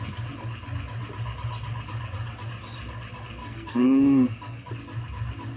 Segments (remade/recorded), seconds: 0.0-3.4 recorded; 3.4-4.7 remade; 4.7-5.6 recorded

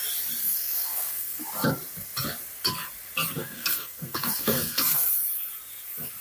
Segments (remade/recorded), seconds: 0.0-0.4 recorded; 0.4-1.4 remade; 1.4-3.4 recorded; 3.4-5.1 remade; 5.1-6.2 recorded

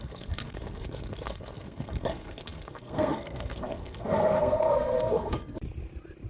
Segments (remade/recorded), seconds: 0.0-5.4 remade; 5.4-6.3 recorded

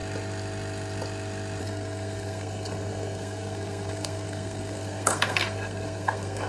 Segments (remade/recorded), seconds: 0.0-1.6 recorded; 1.6-6.5 remade

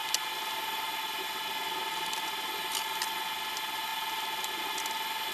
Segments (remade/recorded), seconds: 0.0-5.3 recorded

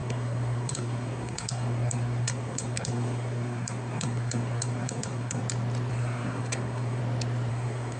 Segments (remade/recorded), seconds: 0.0-5.4 remade; 5.4-5.9 recorded; 5.9-7.0 remade; 7.0-7.5 recorded; 7.5-8.0 remade

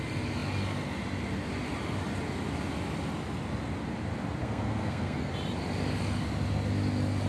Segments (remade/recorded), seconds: 0.0-4.4 recorded; 4.4-5.3 remade; 5.3-7.3 recorded

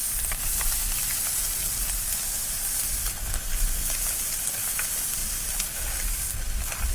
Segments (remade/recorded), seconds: 0.0-6.9 recorded